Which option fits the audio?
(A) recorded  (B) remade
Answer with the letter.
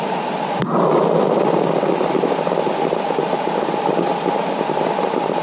A